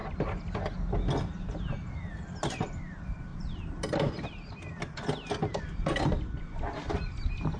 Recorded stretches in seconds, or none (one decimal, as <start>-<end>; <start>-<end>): 0.0-7.6